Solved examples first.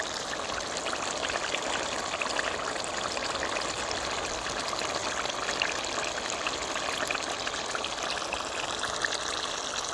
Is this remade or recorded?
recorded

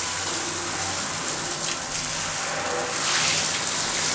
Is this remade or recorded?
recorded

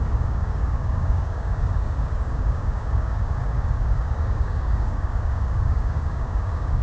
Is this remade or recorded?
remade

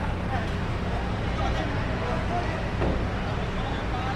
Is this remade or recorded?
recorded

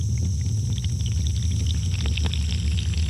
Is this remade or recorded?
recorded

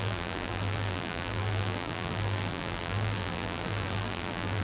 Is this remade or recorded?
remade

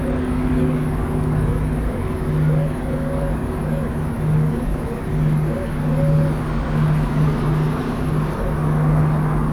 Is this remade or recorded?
remade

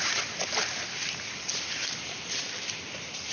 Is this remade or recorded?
remade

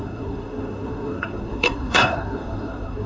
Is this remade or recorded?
remade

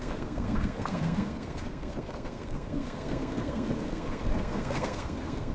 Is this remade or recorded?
remade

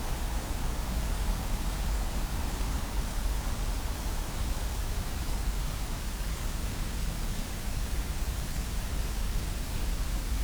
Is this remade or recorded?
remade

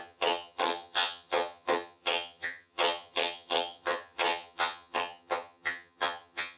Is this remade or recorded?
remade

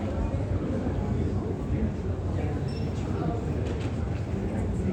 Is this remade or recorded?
remade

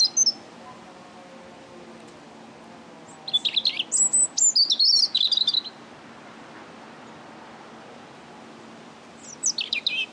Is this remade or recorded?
recorded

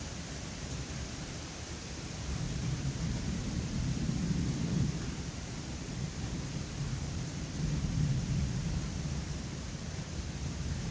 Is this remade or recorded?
remade